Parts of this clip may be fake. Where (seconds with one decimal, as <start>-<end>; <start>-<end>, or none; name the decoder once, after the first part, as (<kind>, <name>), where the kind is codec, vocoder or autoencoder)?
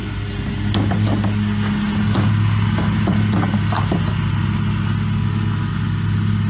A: none